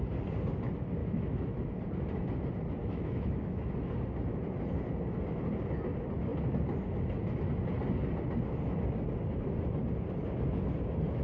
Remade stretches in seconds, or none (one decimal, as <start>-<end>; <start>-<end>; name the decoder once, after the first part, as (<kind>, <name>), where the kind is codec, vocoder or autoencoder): 1.0-1.8 (autoencoder, DAC-VAE); 2.8-3.7